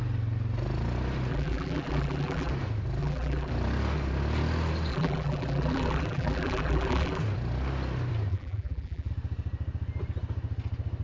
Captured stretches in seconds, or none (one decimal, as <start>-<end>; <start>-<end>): 0.0-1.3; 2.5-3.0; 3.5-4.9; 7.2-8.3; 9.1-11.0